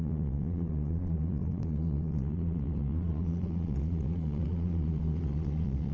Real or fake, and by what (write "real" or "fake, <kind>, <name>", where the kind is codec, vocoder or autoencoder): fake, vocoder, Vocos